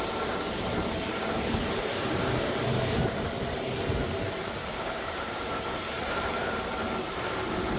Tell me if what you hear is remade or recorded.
remade